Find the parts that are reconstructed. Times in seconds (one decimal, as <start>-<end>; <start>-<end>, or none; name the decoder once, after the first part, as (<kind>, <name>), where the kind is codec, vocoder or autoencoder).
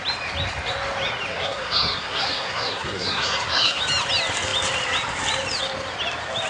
1.3-3.8 (codec, SNAC)